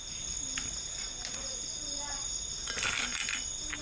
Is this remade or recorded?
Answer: recorded